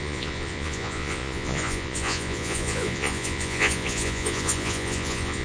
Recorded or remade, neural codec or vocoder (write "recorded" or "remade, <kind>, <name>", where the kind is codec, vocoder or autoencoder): remade, vocoder, Vocos